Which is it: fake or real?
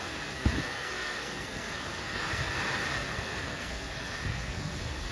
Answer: fake